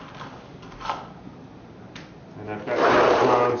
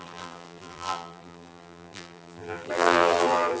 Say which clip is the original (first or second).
first